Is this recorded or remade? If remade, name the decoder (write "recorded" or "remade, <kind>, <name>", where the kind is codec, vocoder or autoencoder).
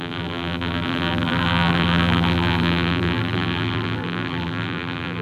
remade, vocoder, BigVGAN v2